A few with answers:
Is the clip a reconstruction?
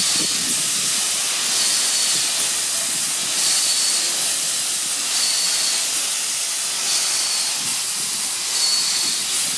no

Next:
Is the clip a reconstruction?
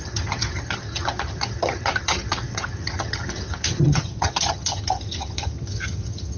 yes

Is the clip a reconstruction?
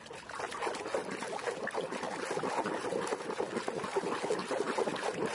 no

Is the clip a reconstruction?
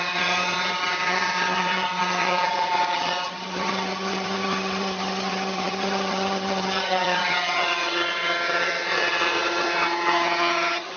yes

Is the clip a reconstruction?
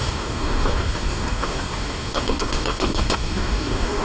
yes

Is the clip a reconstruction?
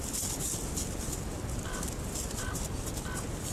no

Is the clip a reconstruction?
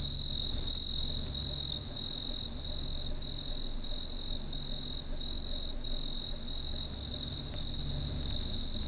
no